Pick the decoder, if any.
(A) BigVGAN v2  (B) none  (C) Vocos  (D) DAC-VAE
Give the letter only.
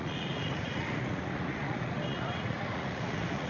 C